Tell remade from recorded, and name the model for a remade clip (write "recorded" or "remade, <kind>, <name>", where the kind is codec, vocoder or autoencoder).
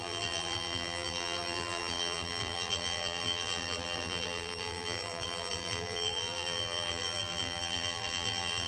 remade, vocoder, BigVGAN v2